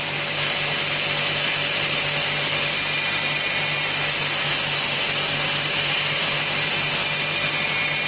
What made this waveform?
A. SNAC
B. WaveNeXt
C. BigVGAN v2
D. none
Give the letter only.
D